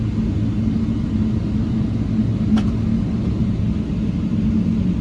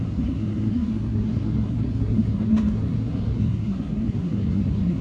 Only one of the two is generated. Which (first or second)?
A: second